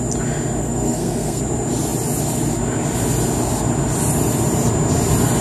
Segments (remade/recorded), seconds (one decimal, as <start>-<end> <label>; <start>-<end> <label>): 0.0-0.6 recorded; 0.6-1.4 remade; 1.4-5.4 recorded